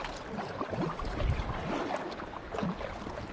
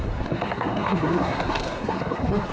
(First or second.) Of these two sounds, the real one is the first